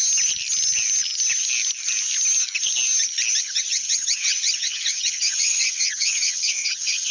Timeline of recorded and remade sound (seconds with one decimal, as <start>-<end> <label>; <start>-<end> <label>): 0.0-3.4 recorded; 3.4-7.1 remade